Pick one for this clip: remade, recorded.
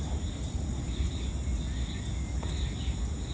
recorded